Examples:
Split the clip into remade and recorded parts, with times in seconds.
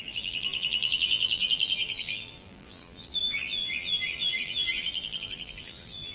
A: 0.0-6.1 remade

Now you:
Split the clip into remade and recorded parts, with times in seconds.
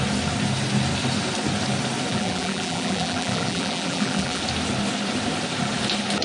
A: 0.0-2.1 recorded; 2.1-4.4 remade; 4.4-6.2 recorded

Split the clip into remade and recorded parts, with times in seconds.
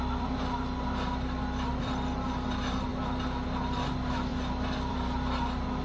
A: 0.0-2.9 remade; 2.9-3.9 recorded; 3.9-4.3 remade; 4.3-4.9 recorded; 4.9-5.8 remade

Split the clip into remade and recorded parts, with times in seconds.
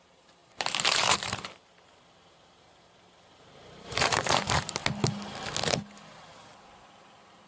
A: 0.0-4.8 remade; 4.8-6.2 recorded; 6.2-7.5 remade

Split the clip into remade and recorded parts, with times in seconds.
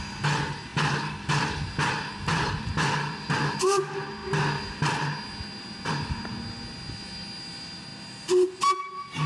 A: 0.0-0.7 recorded; 0.7-1.9 remade; 1.9-2.3 recorded; 2.3-3.5 remade; 3.5-9.3 recorded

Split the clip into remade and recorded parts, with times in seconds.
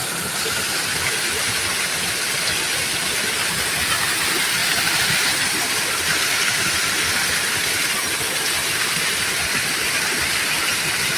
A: 0.0-4.6 recorded; 4.6-5.7 remade; 5.7-8.6 recorded; 8.6-9.3 remade; 9.3-11.2 recorded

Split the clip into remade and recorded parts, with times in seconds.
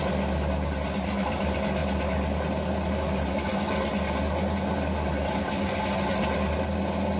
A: 0.0-7.2 recorded